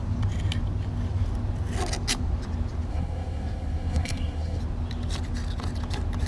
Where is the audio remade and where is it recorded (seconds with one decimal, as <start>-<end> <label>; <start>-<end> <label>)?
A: 0.0-2.9 recorded; 2.9-4.6 remade; 4.6-6.3 recorded

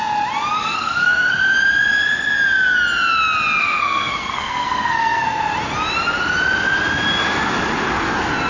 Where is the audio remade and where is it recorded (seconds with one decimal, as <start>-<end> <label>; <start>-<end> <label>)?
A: 0.0-0.6 recorded; 0.6-1.3 remade; 1.3-3.6 recorded; 3.6-5.4 remade; 5.4-8.5 recorded

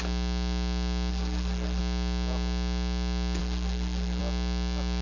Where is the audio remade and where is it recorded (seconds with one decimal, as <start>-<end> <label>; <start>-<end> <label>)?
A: 0.0-1.1 recorded; 1.1-1.8 remade; 1.8-3.4 recorded; 3.4-4.2 remade; 4.2-5.0 recorded

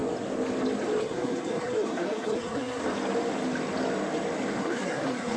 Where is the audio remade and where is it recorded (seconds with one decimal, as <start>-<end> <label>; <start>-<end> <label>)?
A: 0.0-1.0 recorded; 1.0-2.8 remade; 2.8-4.6 recorded; 4.6-5.4 remade

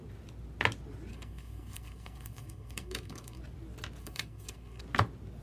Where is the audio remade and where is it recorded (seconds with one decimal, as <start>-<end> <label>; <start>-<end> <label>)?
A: 0.0-1.1 recorded; 1.1-3.4 remade; 3.4-4.0 recorded; 4.0-4.8 remade; 4.8-5.4 recorded

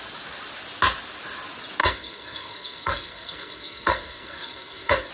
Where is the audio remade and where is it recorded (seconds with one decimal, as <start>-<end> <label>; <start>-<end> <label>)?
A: 0.0-1.8 recorded; 1.8-5.1 remade

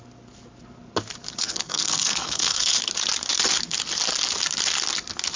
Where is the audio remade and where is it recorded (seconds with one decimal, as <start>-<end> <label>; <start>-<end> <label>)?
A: 0.0-1.4 recorded; 1.4-2.8 remade; 2.8-5.4 recorded